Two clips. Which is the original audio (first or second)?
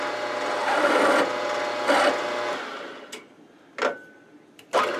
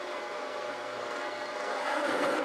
first